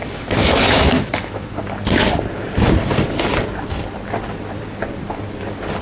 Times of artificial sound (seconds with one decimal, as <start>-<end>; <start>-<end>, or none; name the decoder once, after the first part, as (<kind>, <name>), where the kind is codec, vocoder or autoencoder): 0.0-1.5 (autoencoder, DAC-VAE)